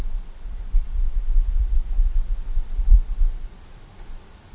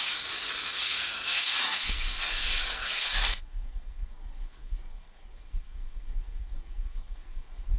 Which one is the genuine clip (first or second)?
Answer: first